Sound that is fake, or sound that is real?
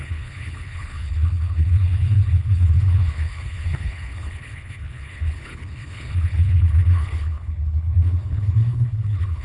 fake